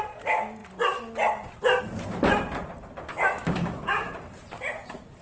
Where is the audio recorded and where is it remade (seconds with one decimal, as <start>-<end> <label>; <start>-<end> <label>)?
0.0-3.4 recorded; 3.4-4.1 remade; 4.1-5.2 recorded